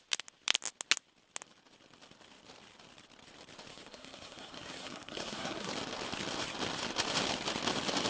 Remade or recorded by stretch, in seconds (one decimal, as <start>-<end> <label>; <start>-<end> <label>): 0.0-3.7 recorded; 3.7-5.7 remade; 5.7-8.1 recorded